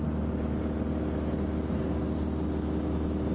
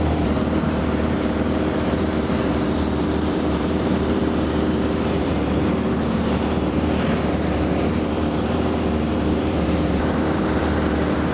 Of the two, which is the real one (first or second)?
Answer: first